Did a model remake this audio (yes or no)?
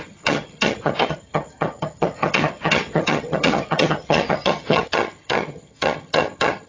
yes